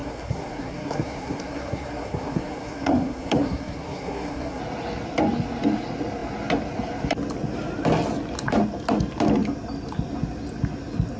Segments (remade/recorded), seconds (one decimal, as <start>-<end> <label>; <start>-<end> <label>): 0.0-4.6 remade; 4.6-11.2 recorded